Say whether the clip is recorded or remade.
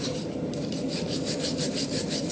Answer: remade